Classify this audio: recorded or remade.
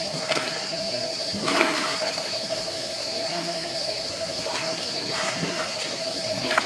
remade